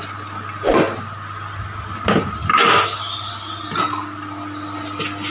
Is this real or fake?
real